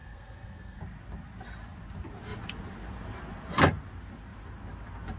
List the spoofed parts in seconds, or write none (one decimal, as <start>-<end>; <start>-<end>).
0.0-0.8

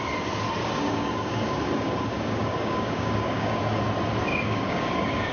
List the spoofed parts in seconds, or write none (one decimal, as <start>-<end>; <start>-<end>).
0.6-3.8; 4.3-5.3

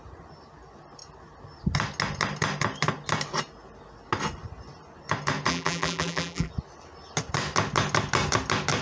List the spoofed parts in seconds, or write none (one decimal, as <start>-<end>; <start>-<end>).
5.5-6.5

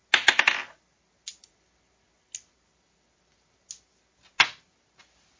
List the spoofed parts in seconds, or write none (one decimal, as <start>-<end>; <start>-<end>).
none